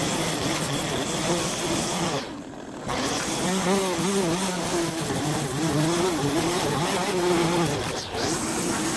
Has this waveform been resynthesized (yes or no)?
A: no